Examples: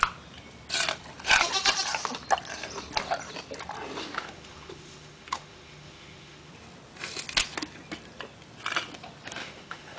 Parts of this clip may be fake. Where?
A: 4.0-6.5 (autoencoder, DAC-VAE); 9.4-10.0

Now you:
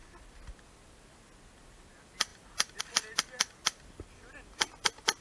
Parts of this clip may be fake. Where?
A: none

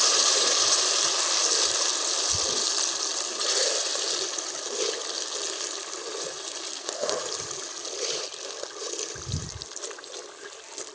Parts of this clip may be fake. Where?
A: 6.7-7.2 (codec, SNAC)

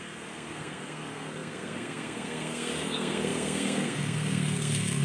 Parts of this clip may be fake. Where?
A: 0.0-5.0 (codec, SNAC)

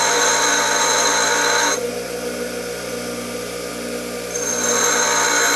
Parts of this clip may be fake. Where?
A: none

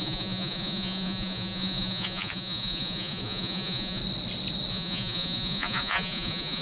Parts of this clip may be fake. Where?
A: 0.0-4.0 (vocoder, Vocos); 4.7-6.6

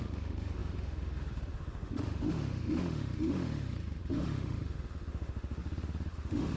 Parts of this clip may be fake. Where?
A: 0.0-6.6 (autoencoder, DAC-VAE)